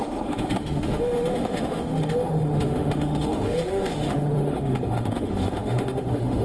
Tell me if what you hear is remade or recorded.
remade